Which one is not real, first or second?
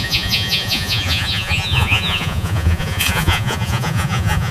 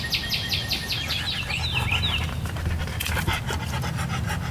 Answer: first